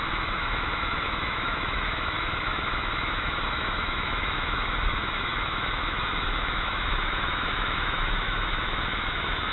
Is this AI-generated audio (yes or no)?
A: yes